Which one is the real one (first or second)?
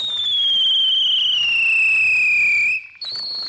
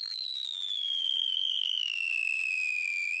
first